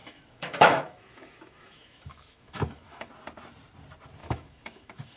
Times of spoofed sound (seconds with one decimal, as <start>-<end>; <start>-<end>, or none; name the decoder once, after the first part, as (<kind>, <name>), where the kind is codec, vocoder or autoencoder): 0.0-3.1 (autoencoder, DAC-VAE); 4.2-5.2